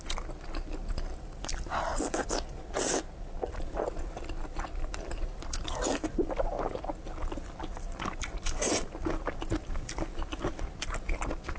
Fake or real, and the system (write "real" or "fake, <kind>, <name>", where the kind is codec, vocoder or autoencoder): real